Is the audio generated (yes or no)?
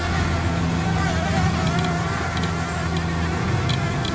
no